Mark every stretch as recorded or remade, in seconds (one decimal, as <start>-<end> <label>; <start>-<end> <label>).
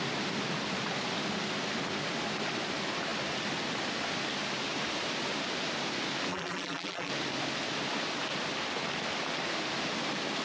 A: 0.0-6.3 recorded; 6.3-7.1 remade; 7.1-10.4 recorded